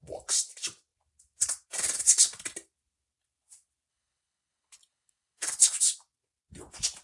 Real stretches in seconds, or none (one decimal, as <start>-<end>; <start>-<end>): 0.0-3.9; 5.8-7.0